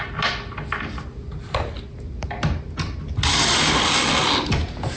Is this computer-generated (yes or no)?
no